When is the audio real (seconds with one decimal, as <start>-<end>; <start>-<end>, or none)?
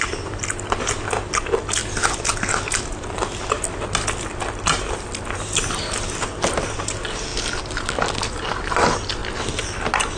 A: 0.0-10.2